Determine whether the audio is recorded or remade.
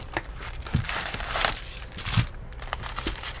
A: remade